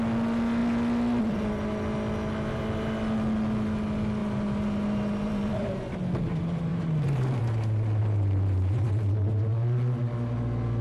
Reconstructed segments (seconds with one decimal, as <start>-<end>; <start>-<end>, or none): 4.2-5.5; 6.7-7.4; 8.0-9.3